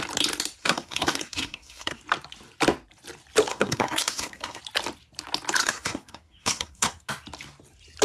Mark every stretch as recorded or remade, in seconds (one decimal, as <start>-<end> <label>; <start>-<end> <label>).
0.0-0.6 recorded; 0.6-2.0 remade; 2.0-3.5 recorded; 3.5-4.6 remade; 4.6-5.6 recorded; 5.6-7.1 remade; 7.1-8.0 recorded